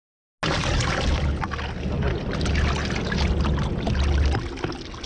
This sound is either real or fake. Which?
real